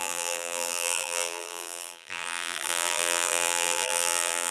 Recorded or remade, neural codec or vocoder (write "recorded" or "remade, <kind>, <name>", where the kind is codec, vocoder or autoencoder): remade, vocoder, BigVGAN v2